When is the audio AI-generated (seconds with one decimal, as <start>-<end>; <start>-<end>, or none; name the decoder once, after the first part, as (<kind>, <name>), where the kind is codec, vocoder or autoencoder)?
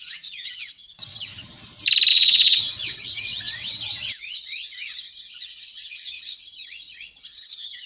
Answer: 0.0-1.3 (vocoder, WaveNeXt); 2.1-7.9